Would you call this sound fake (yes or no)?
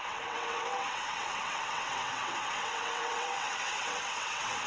yes